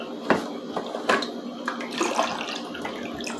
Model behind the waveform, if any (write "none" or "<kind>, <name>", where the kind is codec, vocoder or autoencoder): none